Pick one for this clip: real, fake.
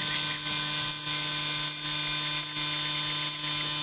real